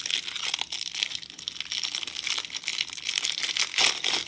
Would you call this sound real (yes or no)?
yes